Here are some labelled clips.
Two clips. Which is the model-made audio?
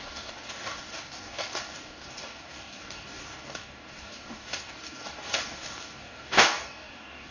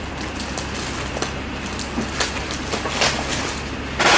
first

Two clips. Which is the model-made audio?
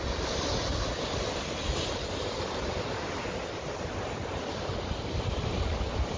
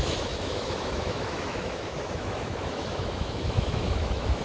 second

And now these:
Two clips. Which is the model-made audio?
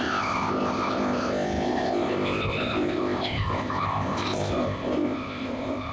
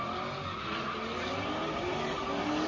first